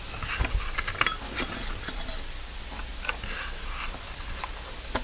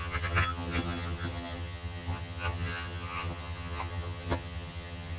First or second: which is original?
first